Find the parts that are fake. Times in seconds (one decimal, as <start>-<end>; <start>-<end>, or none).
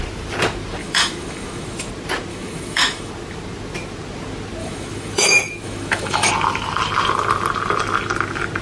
0.8-1.9; 2.3-3.1; 4.6-6.3